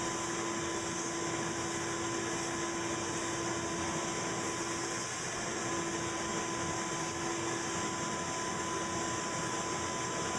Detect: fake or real real